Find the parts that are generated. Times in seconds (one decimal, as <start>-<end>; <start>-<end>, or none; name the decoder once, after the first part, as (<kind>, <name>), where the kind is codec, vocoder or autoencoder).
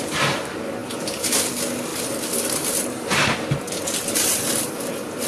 0.8-1.5 (vocoder, BigVGAN v2); 1.9-5.3